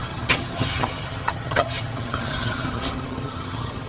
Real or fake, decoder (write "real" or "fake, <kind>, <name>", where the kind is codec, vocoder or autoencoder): fake, vocoder, HiFi-GAN